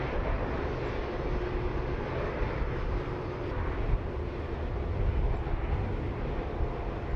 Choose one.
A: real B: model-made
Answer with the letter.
A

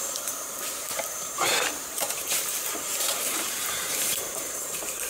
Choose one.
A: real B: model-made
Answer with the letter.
B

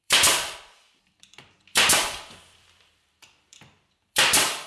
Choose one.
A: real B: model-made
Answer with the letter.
B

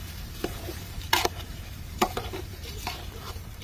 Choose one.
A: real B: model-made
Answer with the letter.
B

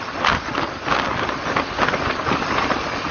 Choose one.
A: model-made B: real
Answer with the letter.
B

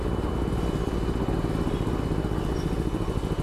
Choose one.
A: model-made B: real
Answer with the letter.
B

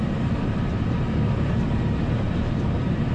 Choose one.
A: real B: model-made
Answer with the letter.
B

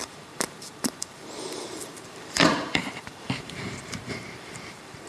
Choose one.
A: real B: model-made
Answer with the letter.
B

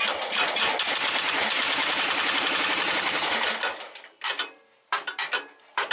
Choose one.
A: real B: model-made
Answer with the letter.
A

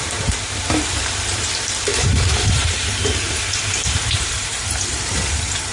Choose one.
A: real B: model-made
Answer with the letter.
B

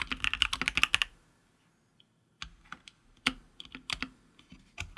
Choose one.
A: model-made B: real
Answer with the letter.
B